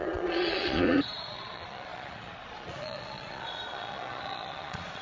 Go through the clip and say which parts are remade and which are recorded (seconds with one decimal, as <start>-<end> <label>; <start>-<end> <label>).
0.0-5.0 remade